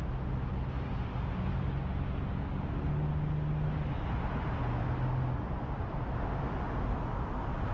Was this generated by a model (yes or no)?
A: no